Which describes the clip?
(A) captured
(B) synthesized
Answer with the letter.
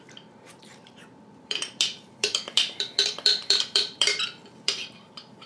B